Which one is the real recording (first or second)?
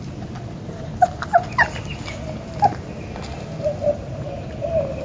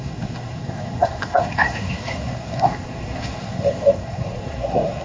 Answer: first